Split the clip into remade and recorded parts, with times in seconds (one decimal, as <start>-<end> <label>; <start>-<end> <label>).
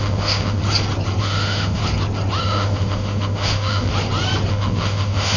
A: 0.0-0.6 remade; 0.6-1.2 recorded; 1.2-1.8 remade; 1.8-2.4 recorded; 2.4-3.9 remade; 3.9-4.5 recorded; 4.5-5.4 remade